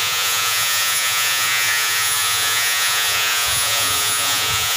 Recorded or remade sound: remade